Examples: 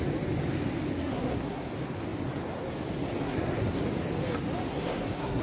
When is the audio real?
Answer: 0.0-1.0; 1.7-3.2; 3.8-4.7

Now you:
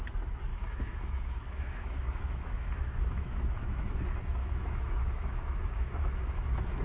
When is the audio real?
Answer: 0.0-0.5; 3.9-4.4